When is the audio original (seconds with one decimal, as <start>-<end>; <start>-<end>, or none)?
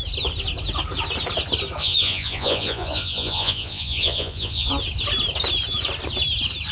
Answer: 0.0-1.8; 4.7-6.7